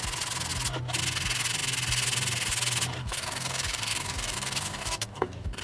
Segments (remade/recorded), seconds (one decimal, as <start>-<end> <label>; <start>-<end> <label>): 0.0-3.0 recorded; 3.0-5.6 remade

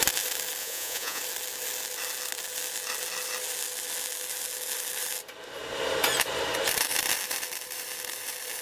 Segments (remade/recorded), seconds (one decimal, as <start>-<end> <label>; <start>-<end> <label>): 0.0-0.6 recorded; 0.6-1.2 remade; 1.2-8.6 recorded